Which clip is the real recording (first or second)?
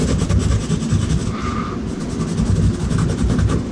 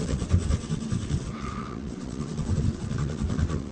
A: first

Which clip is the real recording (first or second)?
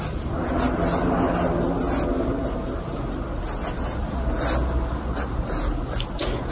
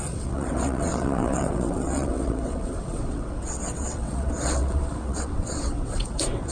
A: first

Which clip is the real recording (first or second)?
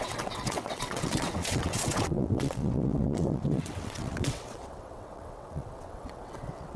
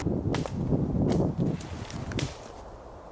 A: second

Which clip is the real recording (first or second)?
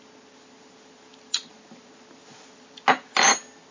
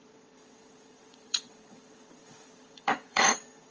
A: first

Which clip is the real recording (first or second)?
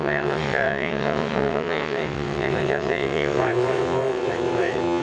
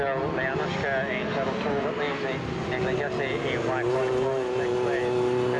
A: second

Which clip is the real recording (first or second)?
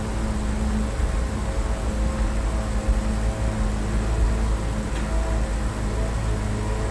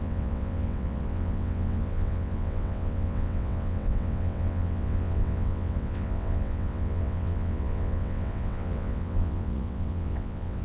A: first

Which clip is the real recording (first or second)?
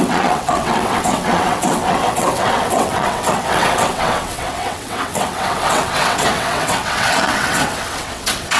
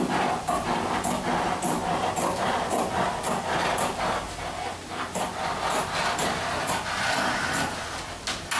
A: second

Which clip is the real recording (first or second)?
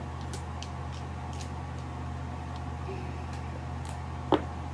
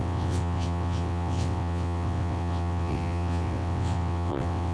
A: first